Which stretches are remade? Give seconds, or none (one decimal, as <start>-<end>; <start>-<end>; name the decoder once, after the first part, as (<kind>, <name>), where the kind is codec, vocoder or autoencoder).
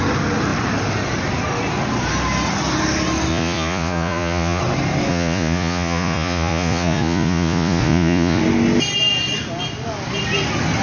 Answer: 3.3-4.6 (vocoder, Vocos); 5.1-8.4